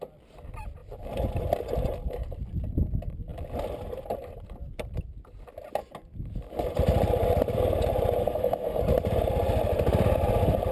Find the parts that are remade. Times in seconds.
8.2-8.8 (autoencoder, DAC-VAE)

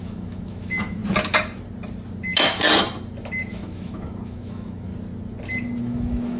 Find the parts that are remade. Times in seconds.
0.0-1.0 (autoencoder, DAC-VAE); 3.5-4.9; 5.8-6.4